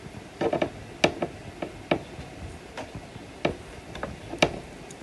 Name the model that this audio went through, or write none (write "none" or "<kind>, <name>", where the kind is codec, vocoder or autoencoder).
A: none